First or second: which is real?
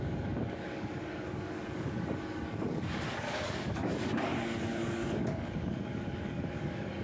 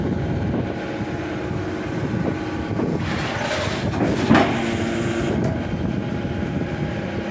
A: second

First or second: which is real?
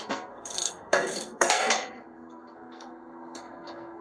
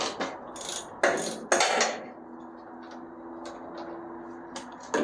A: second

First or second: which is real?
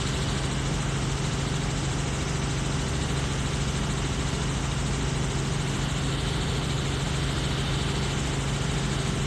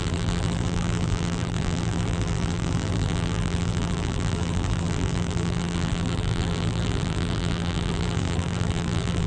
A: first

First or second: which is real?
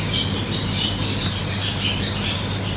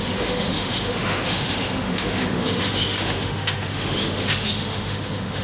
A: first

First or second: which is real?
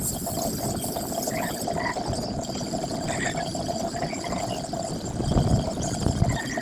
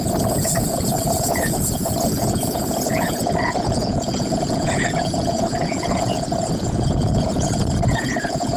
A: first